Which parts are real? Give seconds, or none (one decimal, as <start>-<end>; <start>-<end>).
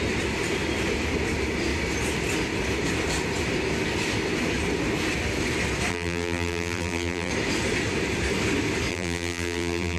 0.0-5.9; 7.3-8.9